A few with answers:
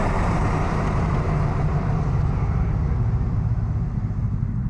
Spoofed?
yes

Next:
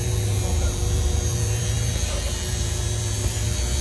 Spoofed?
yes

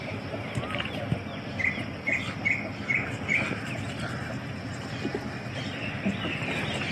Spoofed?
no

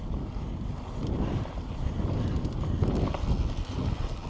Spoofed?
no